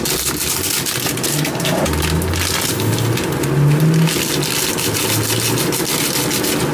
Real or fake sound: real